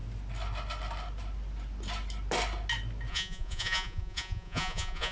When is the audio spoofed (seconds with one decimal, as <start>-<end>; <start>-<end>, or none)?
3.1-5.1